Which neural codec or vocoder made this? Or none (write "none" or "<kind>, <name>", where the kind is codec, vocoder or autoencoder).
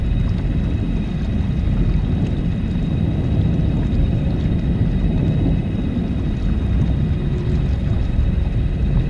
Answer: none